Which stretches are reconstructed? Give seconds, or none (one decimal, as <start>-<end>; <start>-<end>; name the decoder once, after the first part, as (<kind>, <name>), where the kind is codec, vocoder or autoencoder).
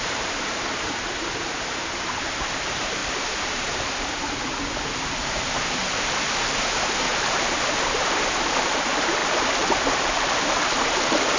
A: 0.0-3.0 (vocoder, BigVGAN v2); 3.5-9.2; 10.8-11.4